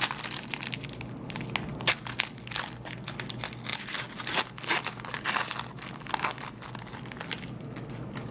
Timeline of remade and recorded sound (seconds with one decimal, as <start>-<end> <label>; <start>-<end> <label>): 0.0-8.3 recorded